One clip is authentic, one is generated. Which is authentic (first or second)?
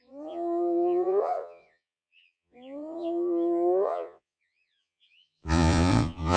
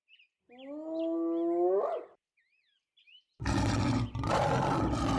second